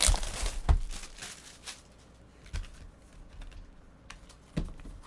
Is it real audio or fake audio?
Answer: real